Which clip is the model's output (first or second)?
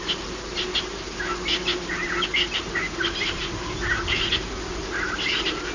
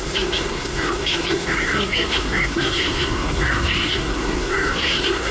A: second